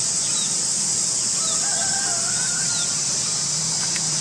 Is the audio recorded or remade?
recorded